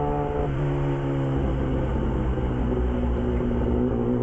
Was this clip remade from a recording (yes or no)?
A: no